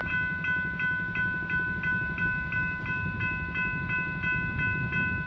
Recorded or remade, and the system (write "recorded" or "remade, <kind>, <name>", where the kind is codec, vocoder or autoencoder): recorded